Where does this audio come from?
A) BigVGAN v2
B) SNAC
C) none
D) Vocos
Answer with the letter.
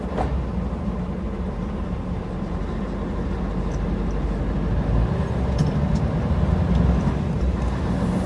C